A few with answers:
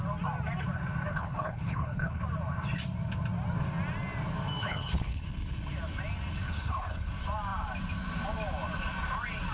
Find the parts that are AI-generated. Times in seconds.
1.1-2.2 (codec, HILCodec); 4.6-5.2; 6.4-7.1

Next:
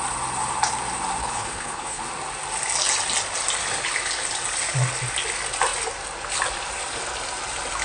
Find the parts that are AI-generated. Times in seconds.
1.2-2.0 (codec, HILCodec)

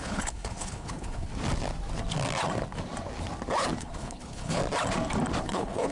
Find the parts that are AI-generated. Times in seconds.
0.0-1.3 (codec, HILCodec); 3.8-4.6; 5.4-5.9

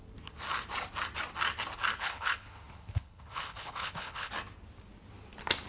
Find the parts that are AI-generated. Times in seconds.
2.0-4.3 (codec, HILCodec)

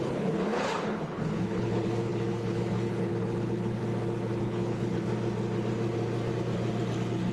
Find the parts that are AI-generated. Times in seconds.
0.0-3.8 (codec, HILCodec); 4.4-5.1

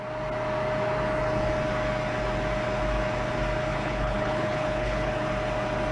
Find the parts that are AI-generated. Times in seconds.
3.7-5.1 (codec, HILCodec)

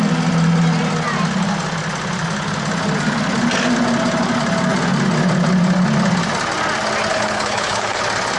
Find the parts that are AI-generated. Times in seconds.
7.1-8.0 (codec, HILCodec)

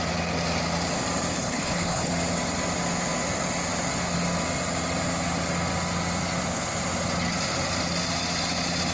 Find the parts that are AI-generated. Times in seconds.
1.3-2.1 (codec, HILCodec)